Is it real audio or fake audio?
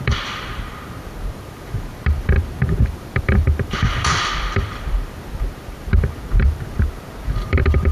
fake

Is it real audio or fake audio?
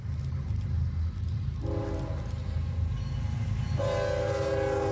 real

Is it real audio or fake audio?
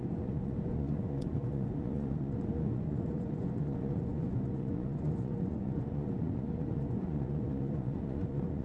fake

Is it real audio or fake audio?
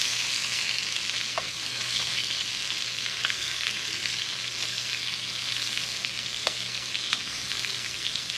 fake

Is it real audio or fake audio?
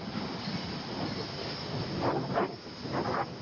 real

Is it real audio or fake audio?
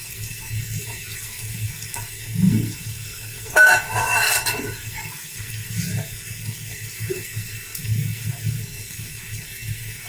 fake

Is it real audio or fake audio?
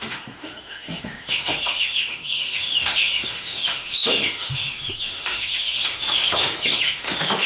fake